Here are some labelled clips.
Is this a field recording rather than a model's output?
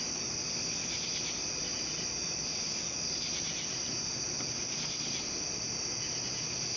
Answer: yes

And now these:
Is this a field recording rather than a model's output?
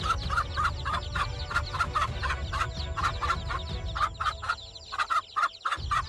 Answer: yes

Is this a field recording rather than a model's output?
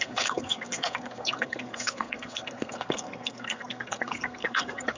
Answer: no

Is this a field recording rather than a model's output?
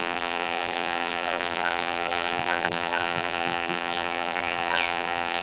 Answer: no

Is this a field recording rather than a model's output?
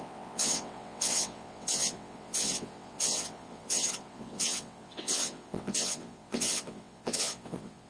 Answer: no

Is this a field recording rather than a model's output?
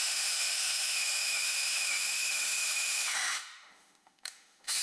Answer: no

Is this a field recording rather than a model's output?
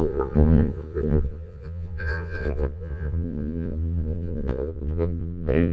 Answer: no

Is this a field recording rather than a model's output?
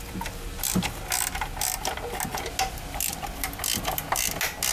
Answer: yes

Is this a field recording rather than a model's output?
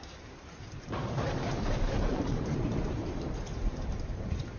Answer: no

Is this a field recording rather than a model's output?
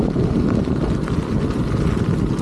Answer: yes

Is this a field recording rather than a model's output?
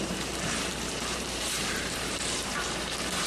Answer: no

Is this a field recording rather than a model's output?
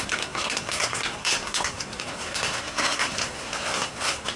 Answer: no